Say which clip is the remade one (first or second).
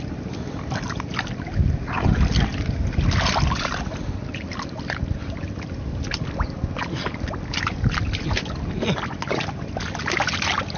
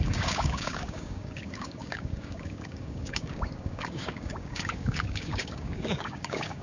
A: second